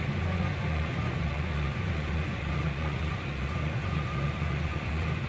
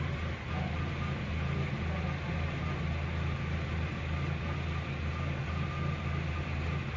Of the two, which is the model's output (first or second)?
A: first